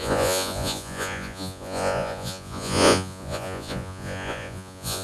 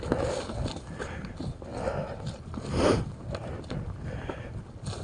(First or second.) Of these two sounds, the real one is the second